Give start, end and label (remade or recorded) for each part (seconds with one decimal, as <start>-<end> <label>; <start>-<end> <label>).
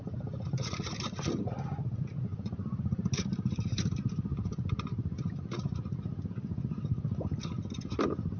0.0-1.3 remade; 1.3-2.3 recorded; 2.3-6.3 remade; 6.3-8.4 recorded